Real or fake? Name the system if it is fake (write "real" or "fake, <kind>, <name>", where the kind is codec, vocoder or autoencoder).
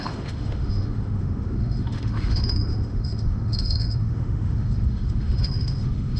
fake, autoencoder, DAC-VAE